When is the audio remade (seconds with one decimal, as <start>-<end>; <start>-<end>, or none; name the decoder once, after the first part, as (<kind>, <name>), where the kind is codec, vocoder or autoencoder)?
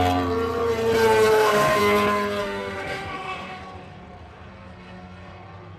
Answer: 1.3-1.8 (autoencoder, DAC-VAE); 2.4-3.6